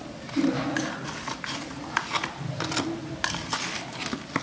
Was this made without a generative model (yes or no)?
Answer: yes